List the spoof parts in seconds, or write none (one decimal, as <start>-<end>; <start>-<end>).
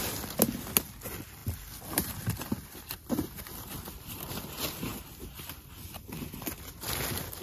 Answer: 1.4-4.5